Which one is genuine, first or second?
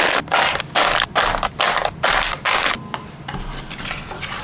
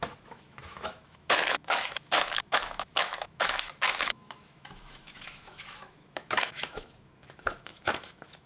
first